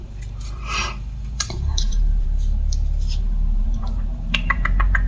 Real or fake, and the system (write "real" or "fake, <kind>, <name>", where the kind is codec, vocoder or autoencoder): fake, vocoder, BigVGAN v2